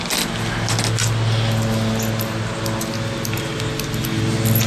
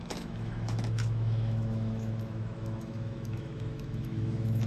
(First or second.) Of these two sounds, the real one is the first